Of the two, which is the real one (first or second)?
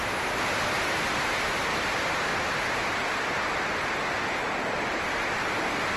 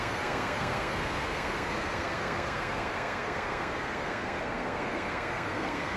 first